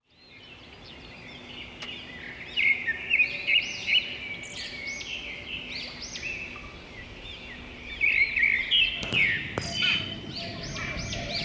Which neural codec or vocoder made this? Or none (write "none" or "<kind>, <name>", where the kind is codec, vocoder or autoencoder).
none